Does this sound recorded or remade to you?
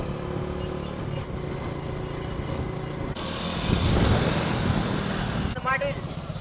recorded